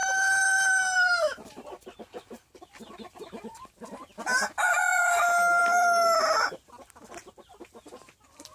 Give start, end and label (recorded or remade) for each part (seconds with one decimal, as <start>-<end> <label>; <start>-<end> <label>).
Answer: 0.0-2.9 remade; 2.9-8.5 recorded